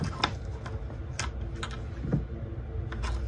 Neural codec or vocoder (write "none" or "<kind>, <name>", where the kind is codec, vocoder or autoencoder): none